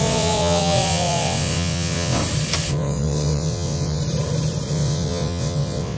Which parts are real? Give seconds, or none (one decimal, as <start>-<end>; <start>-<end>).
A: 2.2-2.7; 4.0-4.7